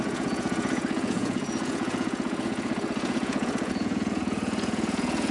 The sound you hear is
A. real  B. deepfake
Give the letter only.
B